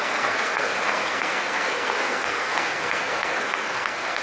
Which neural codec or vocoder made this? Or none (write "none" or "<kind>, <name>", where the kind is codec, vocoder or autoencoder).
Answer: codec, SNAC